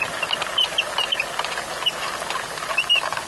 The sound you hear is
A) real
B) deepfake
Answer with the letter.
A